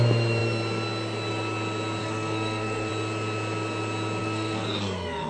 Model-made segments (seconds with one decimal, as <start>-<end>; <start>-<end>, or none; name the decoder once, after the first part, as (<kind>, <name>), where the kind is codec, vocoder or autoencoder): 2.0-2.9 (codec, SNAC); 4.2-5.3

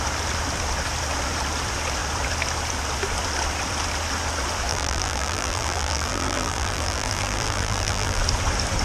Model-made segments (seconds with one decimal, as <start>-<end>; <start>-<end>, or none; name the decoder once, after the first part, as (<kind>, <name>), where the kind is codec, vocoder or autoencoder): 4.7-8.2 (vocoder, BigVGAN v2)

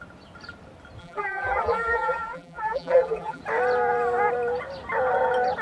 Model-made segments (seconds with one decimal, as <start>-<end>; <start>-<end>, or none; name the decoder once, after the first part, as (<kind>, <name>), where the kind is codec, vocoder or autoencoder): 1.0-3.4 (vocoder, BigVGAN v2)

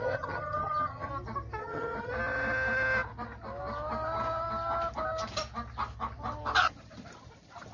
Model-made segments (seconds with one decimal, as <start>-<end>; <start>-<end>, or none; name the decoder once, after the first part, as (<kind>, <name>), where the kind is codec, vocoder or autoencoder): 0.0-1.1 (vocoder, HiFi-GAN); 1.6-2.1

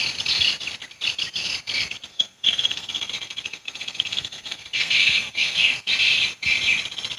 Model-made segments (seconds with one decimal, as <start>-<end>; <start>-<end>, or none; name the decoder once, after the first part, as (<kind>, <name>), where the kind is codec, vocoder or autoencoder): 2.1-5.9 (codec, SNAC)